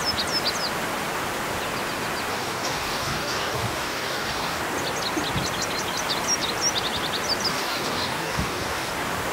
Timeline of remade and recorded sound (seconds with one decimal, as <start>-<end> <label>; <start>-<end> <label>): 0.0-2.3 recorded; 2.3-4.6 remade; 4.6-7.5 recorded; 7.5-8.9 remade; 8.9-9.3 recorded